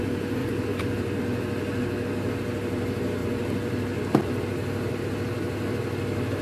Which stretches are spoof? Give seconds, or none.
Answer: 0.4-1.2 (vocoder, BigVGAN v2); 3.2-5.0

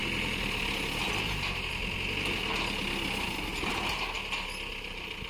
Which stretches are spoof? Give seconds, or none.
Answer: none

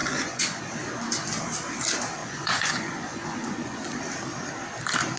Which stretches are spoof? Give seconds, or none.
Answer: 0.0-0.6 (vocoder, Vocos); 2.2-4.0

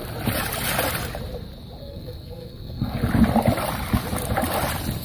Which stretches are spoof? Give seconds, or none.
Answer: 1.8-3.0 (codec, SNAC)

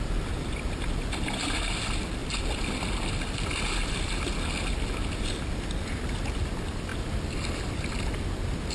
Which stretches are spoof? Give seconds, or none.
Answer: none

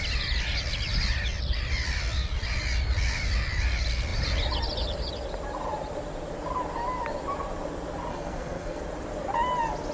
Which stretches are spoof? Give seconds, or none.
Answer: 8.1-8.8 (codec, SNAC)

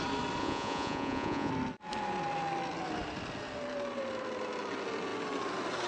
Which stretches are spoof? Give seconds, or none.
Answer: 0.4-1.5 (vocoder, Vocos)

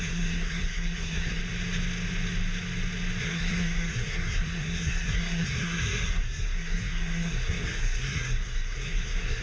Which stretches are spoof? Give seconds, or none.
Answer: 0.0-1.4 (codec, SNAC); 3.2-9.4